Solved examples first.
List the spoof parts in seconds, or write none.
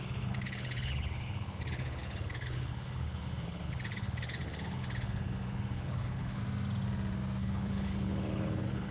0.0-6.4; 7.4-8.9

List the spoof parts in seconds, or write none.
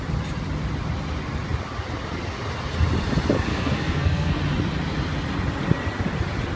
3.5-4.4